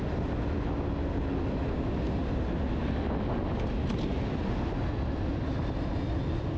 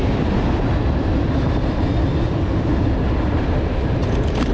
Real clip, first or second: first